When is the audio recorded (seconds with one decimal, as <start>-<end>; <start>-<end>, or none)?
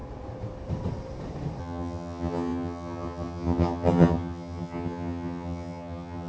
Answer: 0.0-1.6